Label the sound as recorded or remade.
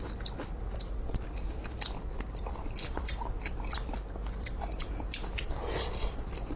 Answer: recorded